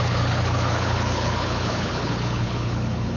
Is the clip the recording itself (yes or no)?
no